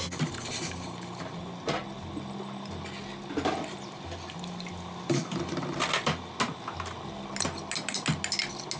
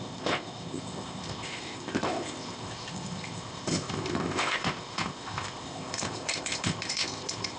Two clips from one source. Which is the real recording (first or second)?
first